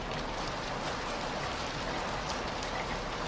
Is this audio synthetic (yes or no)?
no